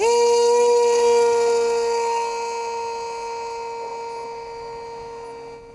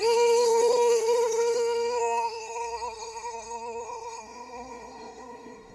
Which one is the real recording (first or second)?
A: first